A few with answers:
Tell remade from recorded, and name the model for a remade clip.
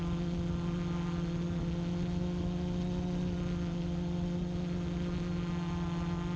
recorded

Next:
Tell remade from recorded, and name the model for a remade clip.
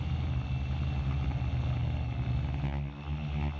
recorded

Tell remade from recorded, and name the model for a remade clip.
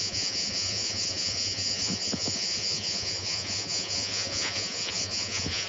remade, vocoder, Vocos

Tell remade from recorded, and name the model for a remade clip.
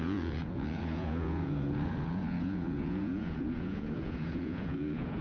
remade, vocoder, Vocos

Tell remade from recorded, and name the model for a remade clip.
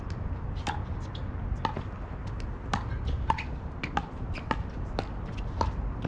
recorded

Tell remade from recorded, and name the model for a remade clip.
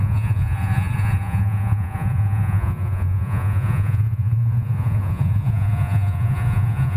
remade, vocoder, Vocos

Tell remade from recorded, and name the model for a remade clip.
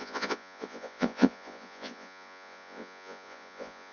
remade, vocoder, Vocos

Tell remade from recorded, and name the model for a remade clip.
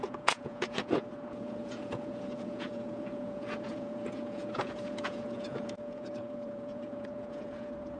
remade, vocoder, Vocos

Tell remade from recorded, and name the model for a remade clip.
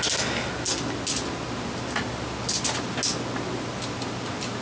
recorded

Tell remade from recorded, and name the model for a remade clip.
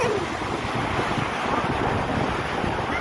recorded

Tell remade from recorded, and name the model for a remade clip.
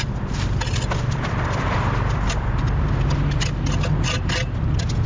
recorded